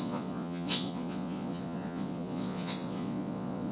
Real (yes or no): no